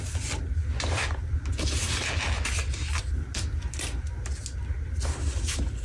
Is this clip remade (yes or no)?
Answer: no